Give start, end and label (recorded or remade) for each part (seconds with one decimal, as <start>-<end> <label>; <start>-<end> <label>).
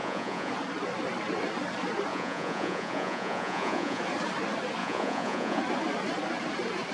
0.0-0.5 remade; 0.5-2.1 recorded; 2.1-4.0 remade; 4.0-4.8 recorded; 4.8-5.6 remade; 5.6-6.9 recorded